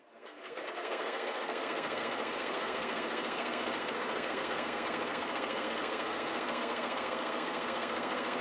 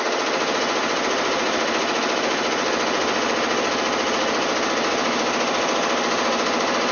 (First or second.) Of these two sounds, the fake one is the first